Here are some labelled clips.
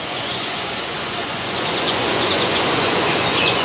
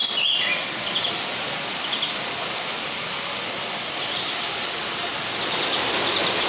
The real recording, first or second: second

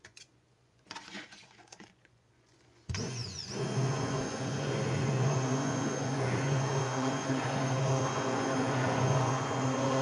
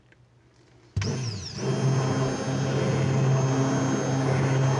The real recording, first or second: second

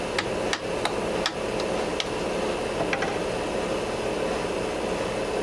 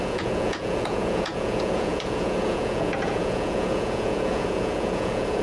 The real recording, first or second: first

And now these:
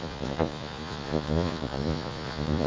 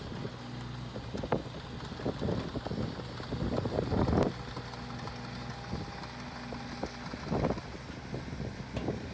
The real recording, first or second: second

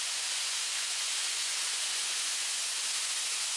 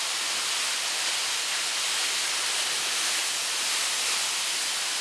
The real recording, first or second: second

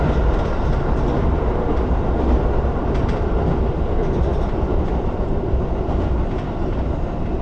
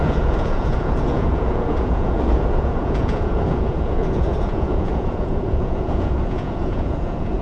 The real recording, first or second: first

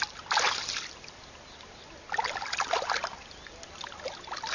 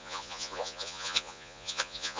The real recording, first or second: first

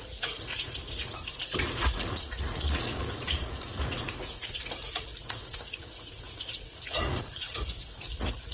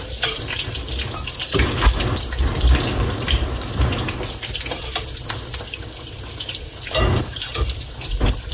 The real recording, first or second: second